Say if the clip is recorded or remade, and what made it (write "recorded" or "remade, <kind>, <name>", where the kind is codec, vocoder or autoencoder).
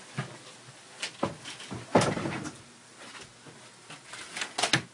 recorded